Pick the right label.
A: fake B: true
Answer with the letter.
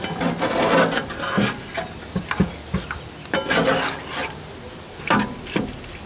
B